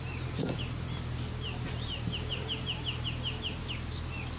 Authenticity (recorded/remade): recorded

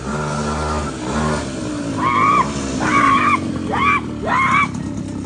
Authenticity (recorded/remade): recorded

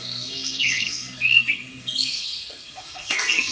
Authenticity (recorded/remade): remade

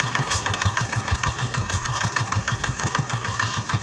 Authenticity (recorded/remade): remade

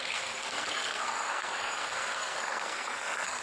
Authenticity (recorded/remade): remade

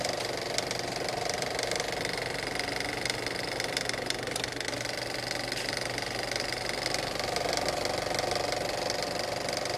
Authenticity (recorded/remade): recorded